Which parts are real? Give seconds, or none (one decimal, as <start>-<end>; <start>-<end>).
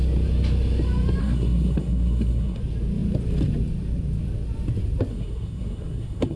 0.0-1.2; 2.6-5.1